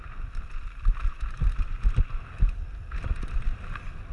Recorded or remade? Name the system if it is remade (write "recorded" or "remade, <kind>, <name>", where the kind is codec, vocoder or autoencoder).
recorded